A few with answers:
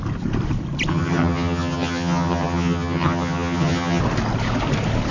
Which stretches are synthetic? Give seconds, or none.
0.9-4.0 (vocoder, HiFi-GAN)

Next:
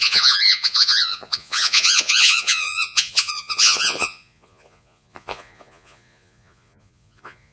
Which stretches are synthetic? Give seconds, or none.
0.0-7.5 (vocoder, Vocos)

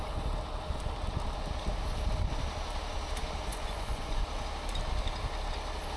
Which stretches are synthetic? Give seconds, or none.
3.5-4.2 (vocoder, Vocos)

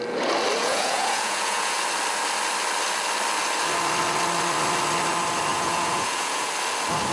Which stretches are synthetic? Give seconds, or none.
0.6-1.8 (vocoder, Vocos); 5.5-6.5

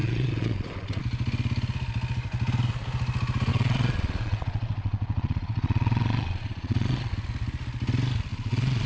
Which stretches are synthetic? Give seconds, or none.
0.0-1.0 (vocoder, Vocos); 3.5-7.1; 8.3-8.9

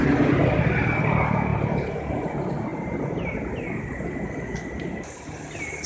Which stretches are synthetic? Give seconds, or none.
none